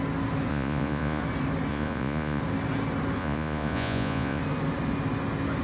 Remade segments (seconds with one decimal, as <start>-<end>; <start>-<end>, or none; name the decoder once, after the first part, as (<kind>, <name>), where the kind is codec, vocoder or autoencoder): 0.5-1.2 (vocoder, Vocos); 1.7-2.4; 3.2-4.4